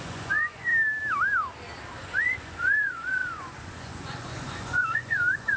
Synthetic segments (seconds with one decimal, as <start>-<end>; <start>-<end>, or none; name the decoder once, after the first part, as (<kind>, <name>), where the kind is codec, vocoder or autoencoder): 0.0-0.7 (vocoder, Vocos); 2.0-5.6